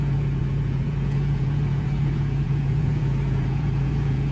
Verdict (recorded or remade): remade